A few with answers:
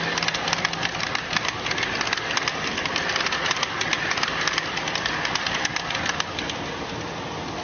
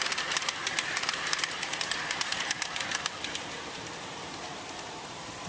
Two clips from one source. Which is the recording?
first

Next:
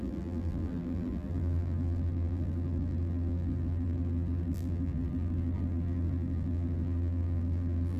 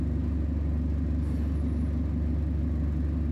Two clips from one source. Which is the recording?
second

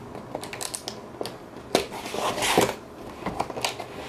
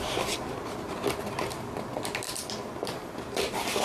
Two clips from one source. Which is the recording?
first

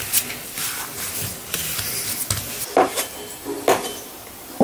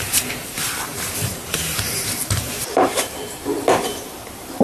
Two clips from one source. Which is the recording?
first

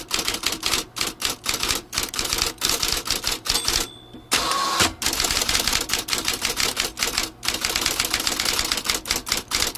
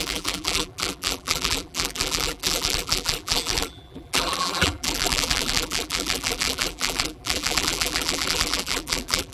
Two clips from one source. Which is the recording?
first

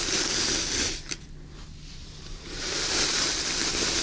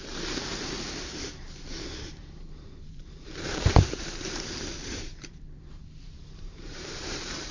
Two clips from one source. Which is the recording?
first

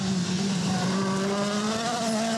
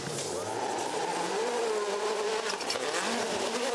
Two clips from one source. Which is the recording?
second